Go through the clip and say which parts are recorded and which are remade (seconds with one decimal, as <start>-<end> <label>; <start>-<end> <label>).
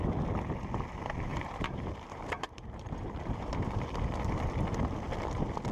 0.0-1.3 recorded; 1.3-3.9 remade; 3.9-5.7 recorded